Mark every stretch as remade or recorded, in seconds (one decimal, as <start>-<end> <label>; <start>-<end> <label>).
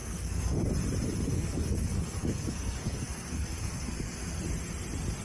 0.0-0.7 remade; 0.7-1.3 recorded; 1.3-4.4 remade; 4.4-5.2 recorded